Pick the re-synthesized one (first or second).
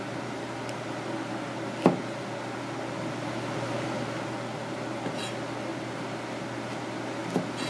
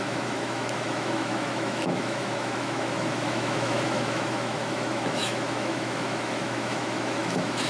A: second